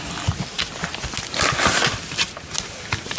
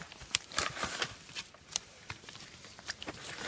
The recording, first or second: first